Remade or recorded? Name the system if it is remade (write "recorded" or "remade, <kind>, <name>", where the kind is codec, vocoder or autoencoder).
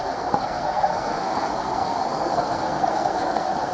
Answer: remade, codec, SNAC